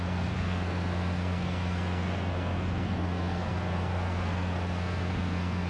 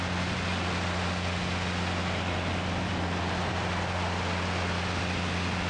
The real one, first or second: second